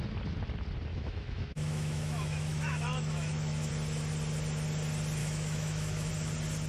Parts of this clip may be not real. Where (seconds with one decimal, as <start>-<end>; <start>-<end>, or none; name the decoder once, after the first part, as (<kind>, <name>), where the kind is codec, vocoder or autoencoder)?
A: 0.9-3.7 (autoencoder, DAC-VAE); 5.2-6.1